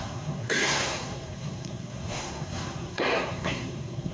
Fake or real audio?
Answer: fake